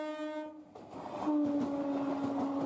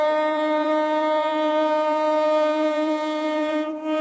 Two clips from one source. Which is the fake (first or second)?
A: second